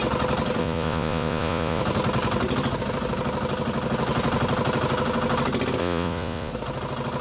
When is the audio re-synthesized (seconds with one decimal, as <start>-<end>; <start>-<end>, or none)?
0.6-1.8; 5.8-6.5